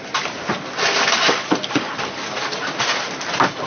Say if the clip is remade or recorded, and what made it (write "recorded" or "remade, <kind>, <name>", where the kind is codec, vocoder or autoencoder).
recorded